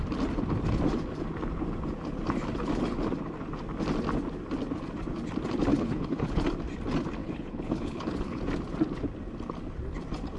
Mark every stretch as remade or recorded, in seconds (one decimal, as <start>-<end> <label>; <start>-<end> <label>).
0.0-5.7 recorded; 5.7-6.4 remade; 6.4-7.2 recorded; 7.2-8.4 remade; 8.4-10.4 recorded